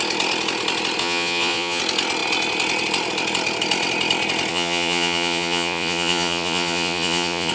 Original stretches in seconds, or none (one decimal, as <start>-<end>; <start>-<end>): 0.0-1.0; 1.8-4.5